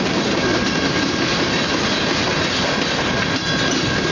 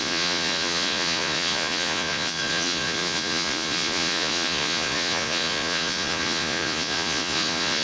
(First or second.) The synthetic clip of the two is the second